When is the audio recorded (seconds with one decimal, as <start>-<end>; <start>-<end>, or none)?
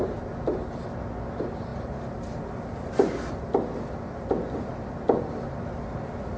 0.0-6.4